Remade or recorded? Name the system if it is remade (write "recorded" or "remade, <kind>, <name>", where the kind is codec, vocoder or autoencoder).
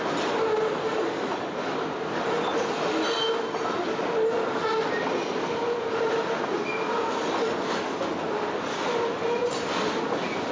recorded